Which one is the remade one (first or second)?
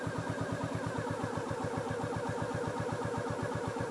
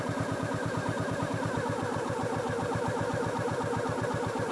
second